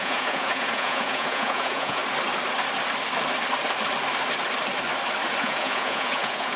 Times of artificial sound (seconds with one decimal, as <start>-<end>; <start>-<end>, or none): 0.0-2.0; 5.4-6.6